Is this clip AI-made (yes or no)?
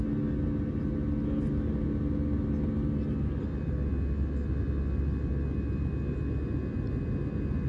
no